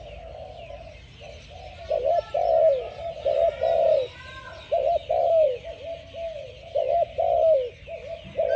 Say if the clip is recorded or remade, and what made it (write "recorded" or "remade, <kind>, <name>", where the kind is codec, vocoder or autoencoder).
recorded